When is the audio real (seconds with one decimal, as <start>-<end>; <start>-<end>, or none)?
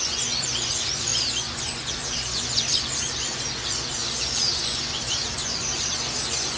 none